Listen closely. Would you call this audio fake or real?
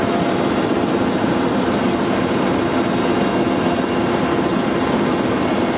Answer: real